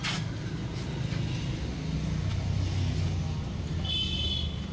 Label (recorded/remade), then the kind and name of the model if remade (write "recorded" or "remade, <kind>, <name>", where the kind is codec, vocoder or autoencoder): recorded